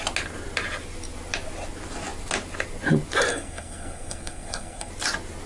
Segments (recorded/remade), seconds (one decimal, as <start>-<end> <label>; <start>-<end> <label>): 0.0-3.3 recorded; 3.3-4.9 remade; 4.9-5.5 recorded